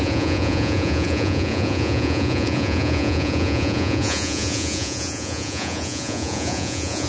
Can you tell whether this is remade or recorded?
remade